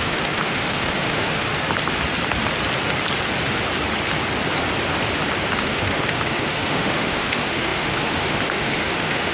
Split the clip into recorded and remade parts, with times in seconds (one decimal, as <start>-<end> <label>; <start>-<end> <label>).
0.0-1.5 remade; 1.5-5.6 recorded; 5.6-9.3 remade